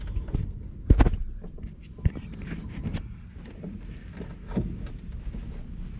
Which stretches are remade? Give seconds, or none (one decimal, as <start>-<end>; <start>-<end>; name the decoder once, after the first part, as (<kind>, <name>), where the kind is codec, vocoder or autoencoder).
2.8-3.8 (vocoder, BigVGAN v2)